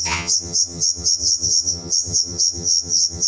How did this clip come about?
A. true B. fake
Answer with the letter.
B